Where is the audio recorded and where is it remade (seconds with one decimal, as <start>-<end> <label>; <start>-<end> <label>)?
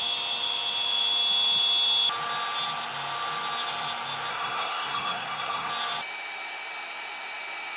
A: 0.0-4.3 recorded; 4.3-5.7 remade; 5.7-7.8 recorded